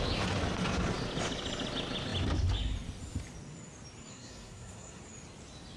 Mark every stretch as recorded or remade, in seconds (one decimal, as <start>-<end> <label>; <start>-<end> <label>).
0.0-4.1 recorded; 4.1-5.0 remade; 5.0-5.8 recorded